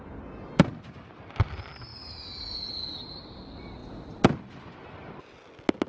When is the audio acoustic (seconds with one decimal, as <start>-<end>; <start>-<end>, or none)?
0.0-1.9; 3.4-5.9